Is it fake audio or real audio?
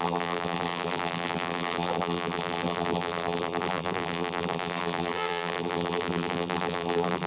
fake